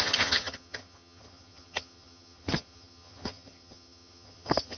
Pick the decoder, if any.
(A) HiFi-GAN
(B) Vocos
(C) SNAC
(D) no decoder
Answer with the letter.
A